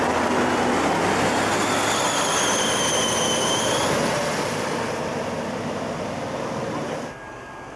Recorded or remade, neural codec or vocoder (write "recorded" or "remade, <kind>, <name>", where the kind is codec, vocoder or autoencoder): recorded